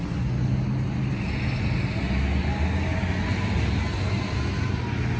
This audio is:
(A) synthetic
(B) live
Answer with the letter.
B